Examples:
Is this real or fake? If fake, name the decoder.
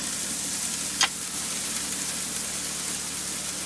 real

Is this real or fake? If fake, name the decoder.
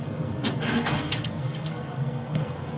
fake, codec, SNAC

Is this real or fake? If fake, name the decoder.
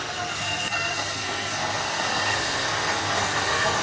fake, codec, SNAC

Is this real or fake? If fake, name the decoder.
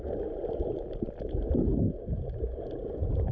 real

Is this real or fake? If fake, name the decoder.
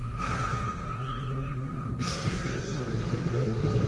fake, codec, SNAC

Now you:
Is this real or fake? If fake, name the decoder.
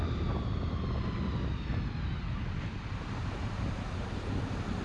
real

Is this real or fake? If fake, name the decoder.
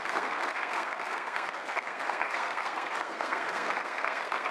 fake, codec, SNAC